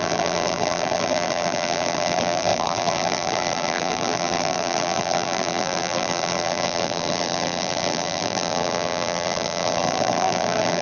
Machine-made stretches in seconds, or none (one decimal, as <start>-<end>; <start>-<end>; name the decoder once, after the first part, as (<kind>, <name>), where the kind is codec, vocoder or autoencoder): 0.0-10.8 (vocoder, BigVGAN v2)